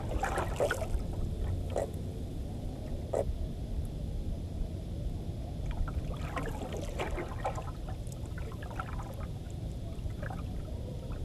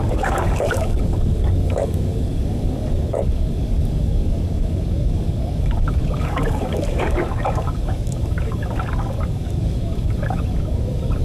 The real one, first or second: first